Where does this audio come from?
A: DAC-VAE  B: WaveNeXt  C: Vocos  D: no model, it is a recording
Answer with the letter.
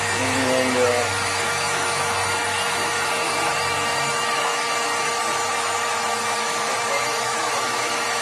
A